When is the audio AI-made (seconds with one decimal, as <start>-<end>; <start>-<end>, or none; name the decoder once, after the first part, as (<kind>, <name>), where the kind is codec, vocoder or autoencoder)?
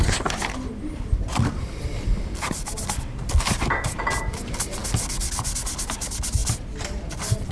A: none